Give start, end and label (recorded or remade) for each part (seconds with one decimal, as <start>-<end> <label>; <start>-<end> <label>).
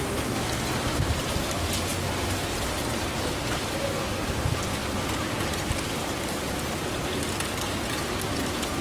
0.0-0.5 remade; 0.5-8.8 recorded